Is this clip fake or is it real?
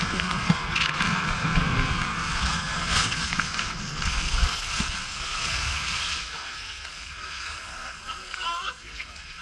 fake